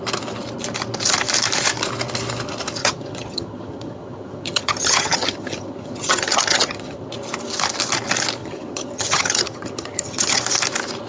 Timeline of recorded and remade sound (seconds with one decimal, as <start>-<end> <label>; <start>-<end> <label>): 0.0-2.8 recorded; 2.8-7.1 remade; 7.1-8.4 recorded; 8.4-10.4 remade; 10.4-11.1 recorded